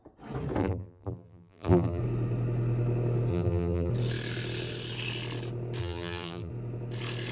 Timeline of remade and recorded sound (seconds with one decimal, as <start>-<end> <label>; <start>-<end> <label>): 0.0-0.6 recorded; 0.6-2.0 remade; 2.0-3.3 recorded; 3.3-3.9 remade; 3.9-5.8 recorded; 5.8-6.5 remade; 6.5-7.3 recorded